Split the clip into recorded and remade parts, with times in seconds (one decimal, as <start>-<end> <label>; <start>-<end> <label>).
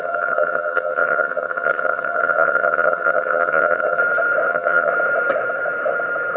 0.0-4.0 remade; 4.0-4.5 recorded; 4.5-4.9 remade; 4.9-6.4 recorded